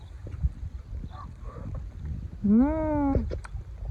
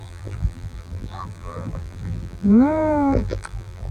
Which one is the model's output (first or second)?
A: second